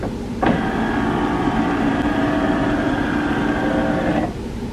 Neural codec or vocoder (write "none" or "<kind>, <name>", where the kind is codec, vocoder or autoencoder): none